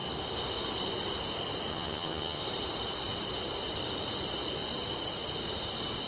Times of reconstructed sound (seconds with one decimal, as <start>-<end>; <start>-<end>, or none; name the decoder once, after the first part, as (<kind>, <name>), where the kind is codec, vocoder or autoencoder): 1.7-2.4 (vocoder, HiFi-GAN)